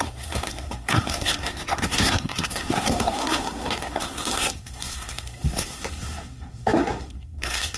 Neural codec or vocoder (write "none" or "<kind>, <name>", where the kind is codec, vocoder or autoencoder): codec, SNAC